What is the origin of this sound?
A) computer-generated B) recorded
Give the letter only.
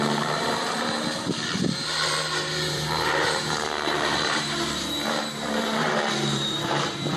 A